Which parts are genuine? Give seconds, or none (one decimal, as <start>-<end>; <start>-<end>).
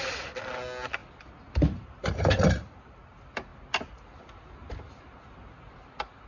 0.0-6.3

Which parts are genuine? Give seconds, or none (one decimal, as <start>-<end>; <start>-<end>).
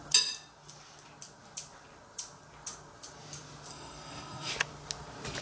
0.0-3.7; 4.5-5.4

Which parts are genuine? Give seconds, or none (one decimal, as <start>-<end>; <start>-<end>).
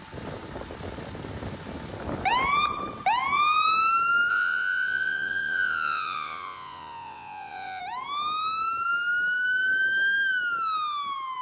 0.0-4.3; 7.8-11.4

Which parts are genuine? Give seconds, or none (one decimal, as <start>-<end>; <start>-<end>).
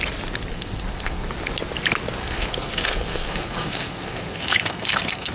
0.0-0.5; 1.3-2.2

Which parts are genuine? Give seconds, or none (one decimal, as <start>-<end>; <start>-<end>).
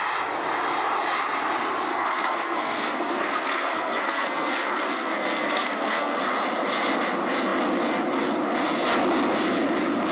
0.0-1.9; 6.2-10.1